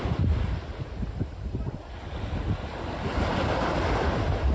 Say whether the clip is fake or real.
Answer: real